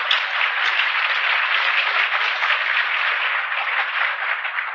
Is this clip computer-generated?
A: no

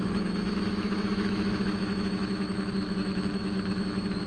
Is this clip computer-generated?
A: yes